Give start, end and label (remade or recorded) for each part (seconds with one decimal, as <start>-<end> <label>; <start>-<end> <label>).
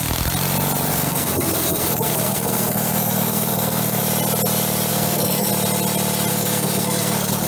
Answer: 0.0-0.9 recorded; 0.9-4.0 remade; 4.0-4.9 recorded; 4.9-5.5 remade; 5.5-6.3 recorded; 6.3-7.5 remade